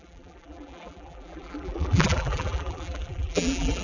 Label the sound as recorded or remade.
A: remade